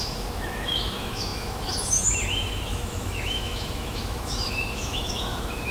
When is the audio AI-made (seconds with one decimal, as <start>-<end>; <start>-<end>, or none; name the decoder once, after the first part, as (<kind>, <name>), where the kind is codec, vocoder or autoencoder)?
0.0-5.7 (autoencoder, DAC-VAE)